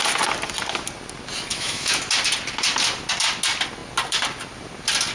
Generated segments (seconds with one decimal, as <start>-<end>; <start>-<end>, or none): 1.5-2.0